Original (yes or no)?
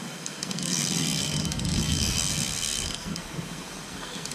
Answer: no